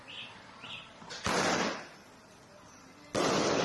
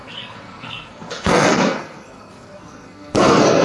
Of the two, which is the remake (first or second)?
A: second